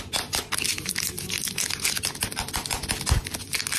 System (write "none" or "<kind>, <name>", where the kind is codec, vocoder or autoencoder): none